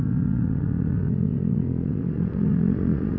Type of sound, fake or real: fake